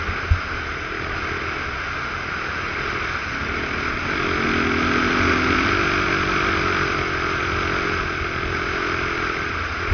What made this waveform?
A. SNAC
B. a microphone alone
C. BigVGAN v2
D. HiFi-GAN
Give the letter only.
B